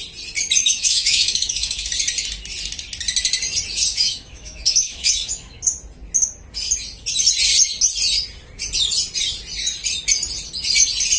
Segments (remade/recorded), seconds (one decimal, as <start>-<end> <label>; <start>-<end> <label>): 0.0-0.6 recorded; 0.6-1.9 remade; 1.9-3.9 recorded; 3.9-5.6 remade; 5.6-11.2 recorded